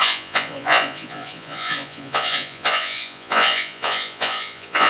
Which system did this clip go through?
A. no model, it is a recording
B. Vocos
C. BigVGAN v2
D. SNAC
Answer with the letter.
B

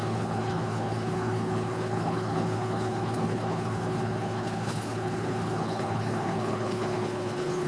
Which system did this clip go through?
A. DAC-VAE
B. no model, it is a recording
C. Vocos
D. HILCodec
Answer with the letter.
D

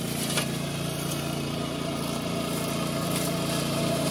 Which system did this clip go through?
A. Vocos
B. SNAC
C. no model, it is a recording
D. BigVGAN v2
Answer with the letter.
D